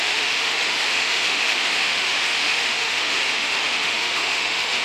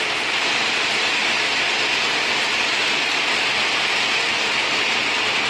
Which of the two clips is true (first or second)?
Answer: second